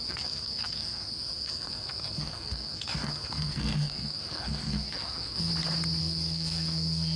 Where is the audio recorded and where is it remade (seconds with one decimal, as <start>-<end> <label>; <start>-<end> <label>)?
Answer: 0.0-5.5 remade; 5.5-6.0 recorded; 6.0-7.2 remade